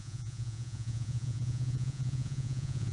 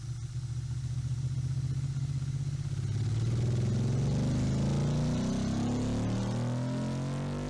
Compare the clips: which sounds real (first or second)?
second